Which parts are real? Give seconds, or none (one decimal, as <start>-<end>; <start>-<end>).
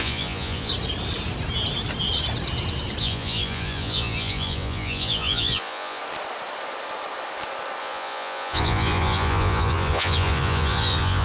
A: 0.7-3.0; 6.0-7.8